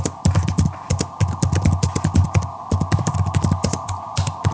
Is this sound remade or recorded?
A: recorded